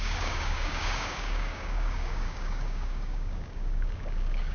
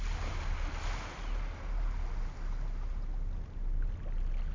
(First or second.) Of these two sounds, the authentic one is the second